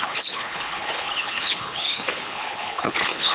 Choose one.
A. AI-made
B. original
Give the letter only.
A